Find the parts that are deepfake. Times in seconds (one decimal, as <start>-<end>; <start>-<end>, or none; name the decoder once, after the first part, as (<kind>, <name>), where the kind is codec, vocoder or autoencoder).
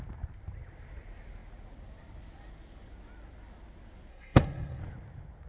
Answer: 4.1-4.8 (codec, SNAC)